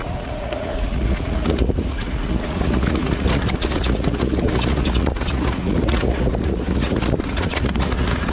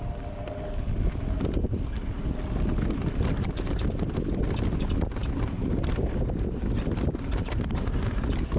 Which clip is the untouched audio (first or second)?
second